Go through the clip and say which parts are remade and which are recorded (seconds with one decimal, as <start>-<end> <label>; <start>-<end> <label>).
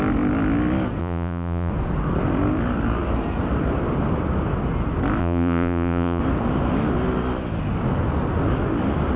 0.0-1.0 recorded; 1.0-1.7 remade; 1.7-5.2 recorded; 5.2-6.2 remade; 6.2-9.2 recorded